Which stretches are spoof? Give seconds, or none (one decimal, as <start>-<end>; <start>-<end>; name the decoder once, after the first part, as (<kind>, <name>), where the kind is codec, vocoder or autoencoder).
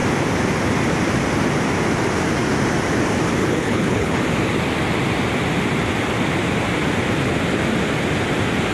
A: 3.4-4.2 (codec, HILCodec)